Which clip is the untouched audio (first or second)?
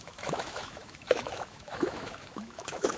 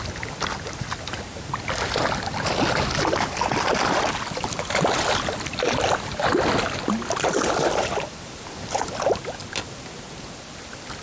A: second